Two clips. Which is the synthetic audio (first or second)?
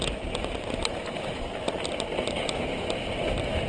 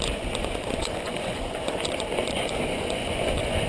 second